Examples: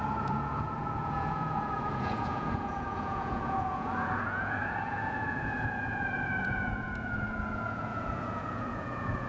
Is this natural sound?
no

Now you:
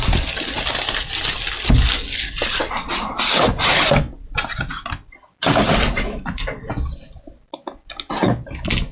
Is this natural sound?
yes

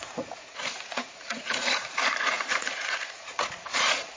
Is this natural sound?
no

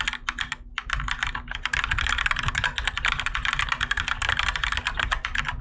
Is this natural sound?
yes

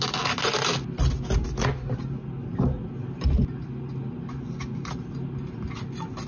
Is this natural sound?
yes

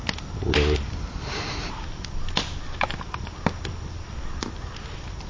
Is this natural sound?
yes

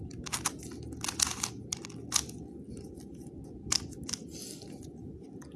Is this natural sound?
yes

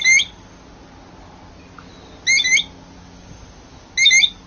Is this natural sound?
yes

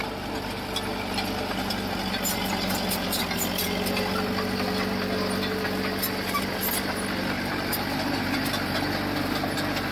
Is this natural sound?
yes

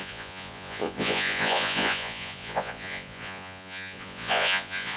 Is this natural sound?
no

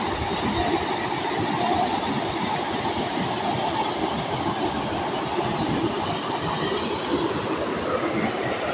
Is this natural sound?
yes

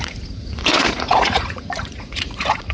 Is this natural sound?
no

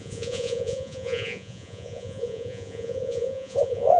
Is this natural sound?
no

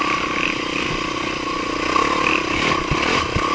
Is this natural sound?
yes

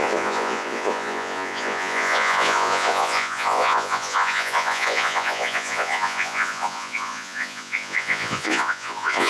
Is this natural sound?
no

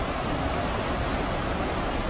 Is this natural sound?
yes